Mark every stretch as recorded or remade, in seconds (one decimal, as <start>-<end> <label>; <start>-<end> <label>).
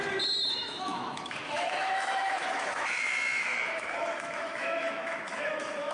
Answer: 0.0-0.5 recorded; 0.5-5.9 remade